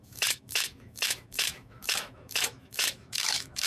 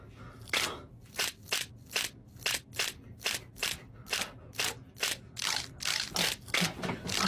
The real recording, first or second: second